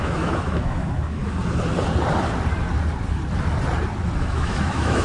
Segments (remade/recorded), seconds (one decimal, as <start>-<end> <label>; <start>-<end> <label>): 0.0-1.2 remade; 1.2-4.2 recorded; 4.2-5.0 remade